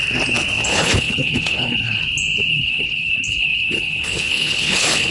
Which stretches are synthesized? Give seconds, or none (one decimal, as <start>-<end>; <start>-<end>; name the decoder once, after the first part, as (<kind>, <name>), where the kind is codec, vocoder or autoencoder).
0.7-2.0 (codec, HILCodec); 2.5-5.1